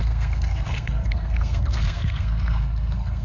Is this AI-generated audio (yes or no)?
yes